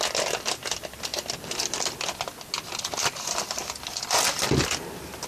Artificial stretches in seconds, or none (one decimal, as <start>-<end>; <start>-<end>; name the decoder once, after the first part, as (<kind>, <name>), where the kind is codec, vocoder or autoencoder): none